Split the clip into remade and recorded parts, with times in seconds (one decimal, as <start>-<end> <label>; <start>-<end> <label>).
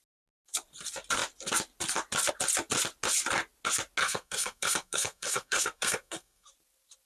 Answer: 0.0-4.0 recorded; 4.0-6.5 remade; 6.5-7.1 recorded